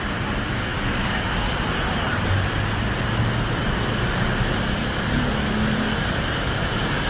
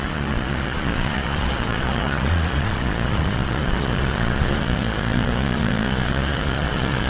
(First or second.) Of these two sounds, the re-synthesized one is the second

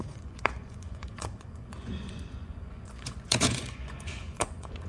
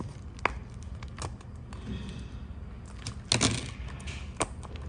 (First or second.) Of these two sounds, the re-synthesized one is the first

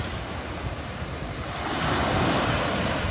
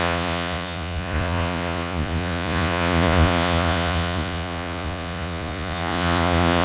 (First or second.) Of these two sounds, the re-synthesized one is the second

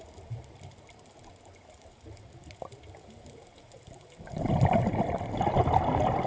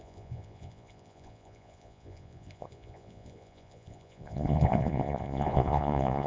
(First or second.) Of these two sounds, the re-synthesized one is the second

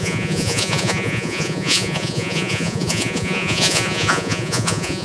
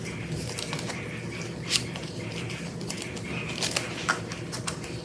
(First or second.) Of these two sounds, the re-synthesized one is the first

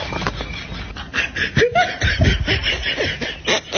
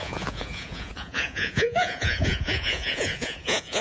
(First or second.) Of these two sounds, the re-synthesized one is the second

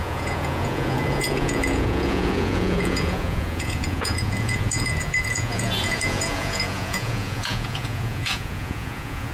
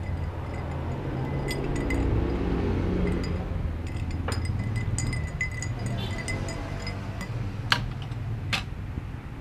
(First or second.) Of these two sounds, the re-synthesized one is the first